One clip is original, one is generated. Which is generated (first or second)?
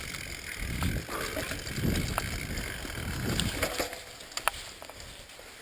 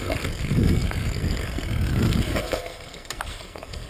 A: second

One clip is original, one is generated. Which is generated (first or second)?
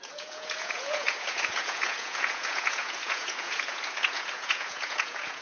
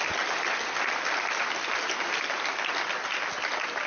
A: first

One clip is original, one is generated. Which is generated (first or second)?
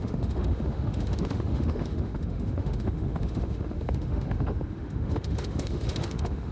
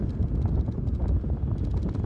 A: first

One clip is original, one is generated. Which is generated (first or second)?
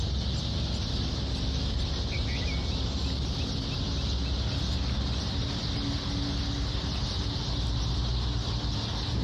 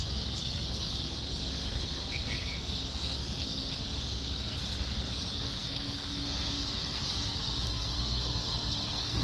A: second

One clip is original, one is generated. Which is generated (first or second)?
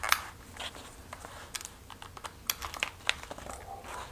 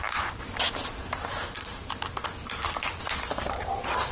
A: second